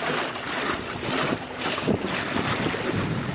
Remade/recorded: remade